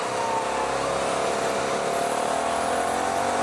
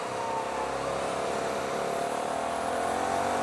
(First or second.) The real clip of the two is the first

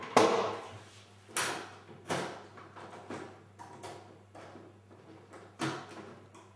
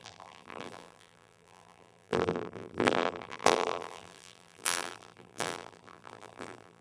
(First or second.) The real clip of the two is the first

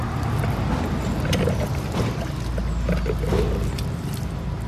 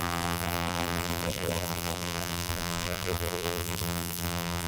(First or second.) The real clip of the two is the first